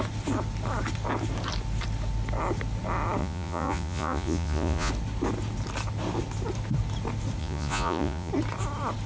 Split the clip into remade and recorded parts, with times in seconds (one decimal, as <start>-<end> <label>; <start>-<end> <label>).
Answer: 0.0-3.2 recorded; 3.2-4.9 remade; 4.9-7.4 recorded; 7.4-8.3 remade; 8.3-9.1 recorded